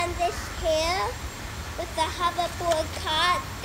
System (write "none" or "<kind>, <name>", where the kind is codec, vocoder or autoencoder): none